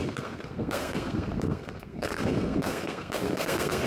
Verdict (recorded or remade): remade